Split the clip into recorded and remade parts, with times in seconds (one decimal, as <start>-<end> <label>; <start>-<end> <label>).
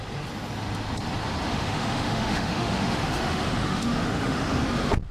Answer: 0.0-1.5 recorded; 1.5-4.6 remade; 4.6-5.1 recorded